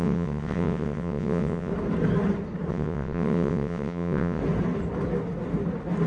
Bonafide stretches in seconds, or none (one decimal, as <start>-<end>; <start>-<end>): 1.7-2.7; 4.4-6.1